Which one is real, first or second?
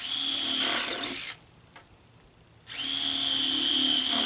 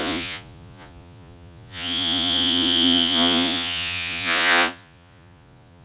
first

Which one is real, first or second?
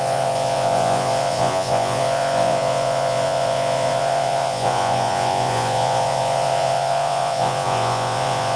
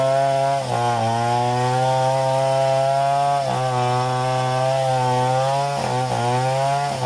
second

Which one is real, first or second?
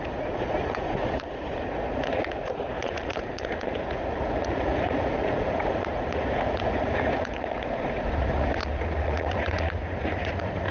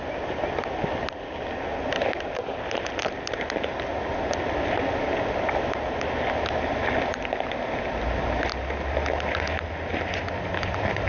second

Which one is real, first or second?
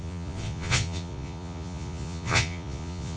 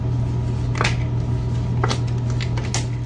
second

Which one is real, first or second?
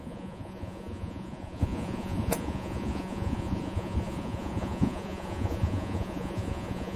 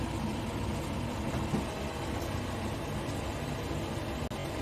second